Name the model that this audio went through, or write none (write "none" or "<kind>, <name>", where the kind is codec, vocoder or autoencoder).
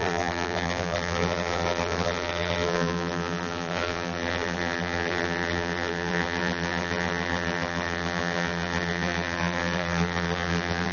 vocoder, BigVGAN v2